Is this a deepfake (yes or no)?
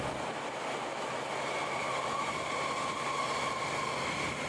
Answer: no